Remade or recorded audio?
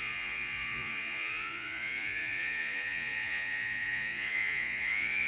remade